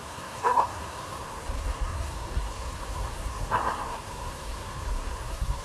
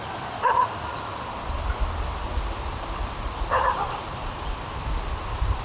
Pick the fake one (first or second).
first